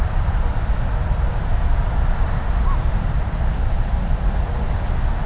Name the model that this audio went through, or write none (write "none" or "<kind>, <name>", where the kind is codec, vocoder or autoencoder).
none